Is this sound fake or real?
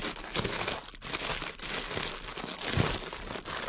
real